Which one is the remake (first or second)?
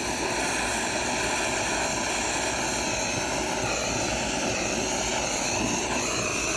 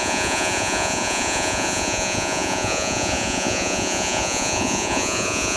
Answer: second